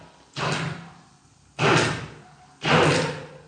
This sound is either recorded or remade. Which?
recorded